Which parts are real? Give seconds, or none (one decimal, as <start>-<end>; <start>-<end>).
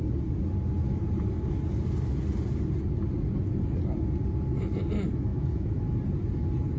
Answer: 0.0-5.3; 5.8-6.8